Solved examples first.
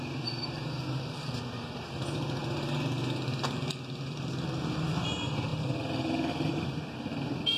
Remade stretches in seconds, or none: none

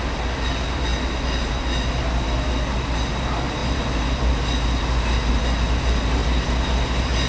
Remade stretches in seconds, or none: none

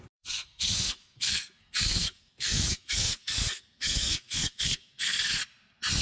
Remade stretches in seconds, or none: 0.0-5.4

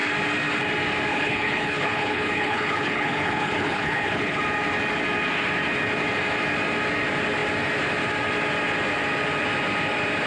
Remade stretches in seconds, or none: 1.1-4.4